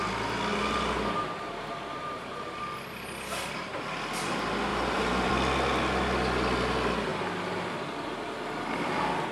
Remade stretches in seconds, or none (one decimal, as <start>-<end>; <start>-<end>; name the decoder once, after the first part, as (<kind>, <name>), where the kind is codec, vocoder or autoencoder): 0.5-2.6 (vocoder, BigVGAN v2); 4.7-5.3